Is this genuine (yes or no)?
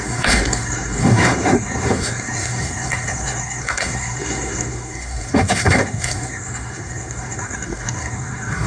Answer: no